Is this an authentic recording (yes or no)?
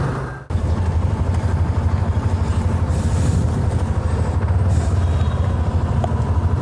yes